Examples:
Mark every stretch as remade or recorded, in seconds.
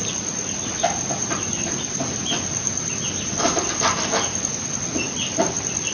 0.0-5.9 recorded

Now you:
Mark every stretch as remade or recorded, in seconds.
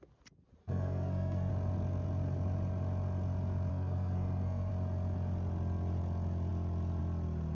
0.0-0.6 recorded; 0.6-1.5 remade; 1.5-3.7 recorded; 3.7-4.7 remade; 4.7-7.5 recorded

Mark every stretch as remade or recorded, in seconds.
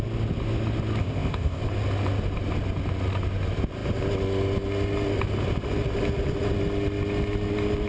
0.0-1.0 recorded; 1.0-1.6 remade; 1.6-7.9 recorded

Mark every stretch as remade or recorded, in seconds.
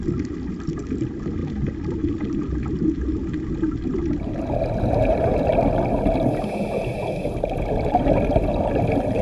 0.0-9.2 recorded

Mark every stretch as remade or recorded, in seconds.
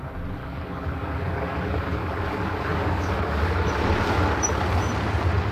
0.0-0.4 recorded; 0.4-3.7 remade; 3.7-5.5 recorded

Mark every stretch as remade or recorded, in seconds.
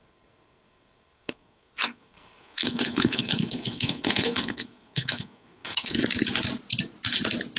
0.0-6.0 remade; 6.0-7.6 recorded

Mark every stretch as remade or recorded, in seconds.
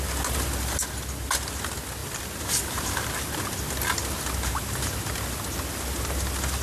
0.0-6.6 recorded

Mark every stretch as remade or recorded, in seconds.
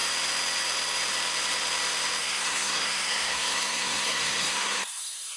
0.0-2.2 recorded; 2.2-5.4 remade